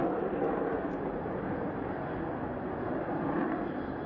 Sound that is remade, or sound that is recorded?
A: recorded